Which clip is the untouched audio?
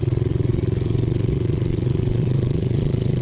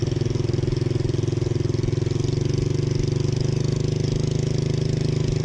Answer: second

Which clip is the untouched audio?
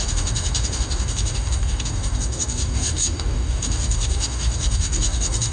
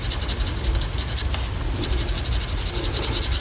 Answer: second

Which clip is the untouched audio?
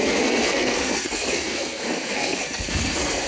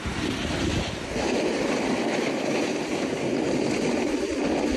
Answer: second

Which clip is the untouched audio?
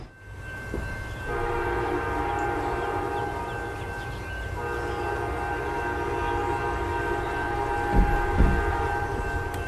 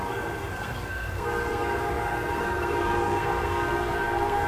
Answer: first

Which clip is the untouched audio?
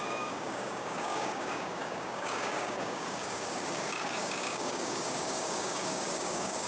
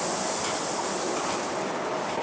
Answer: second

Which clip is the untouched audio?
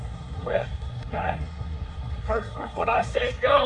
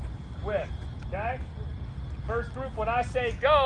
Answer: second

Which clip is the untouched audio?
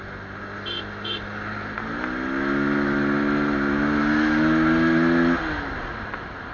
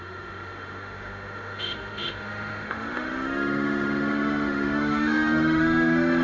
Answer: first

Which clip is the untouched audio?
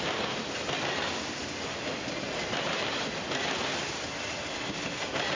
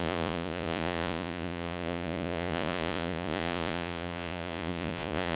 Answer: first